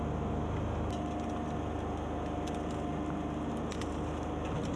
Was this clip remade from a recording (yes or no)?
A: no